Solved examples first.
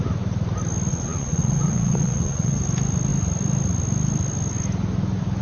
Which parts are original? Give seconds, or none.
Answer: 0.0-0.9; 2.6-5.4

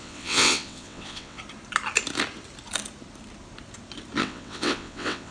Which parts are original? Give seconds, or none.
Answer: 1.4-4.2

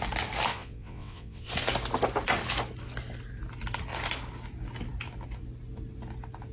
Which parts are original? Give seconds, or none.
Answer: 0.0-0.5; 1.5-6.5

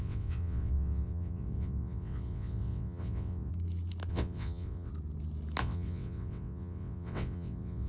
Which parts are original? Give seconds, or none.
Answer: 3.5-4.1; 4.9-5.6

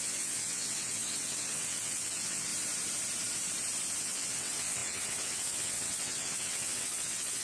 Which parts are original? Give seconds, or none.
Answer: 2.5-4.0